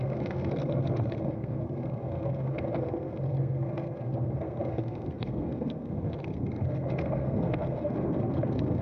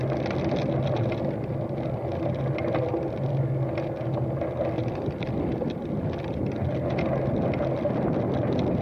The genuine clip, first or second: second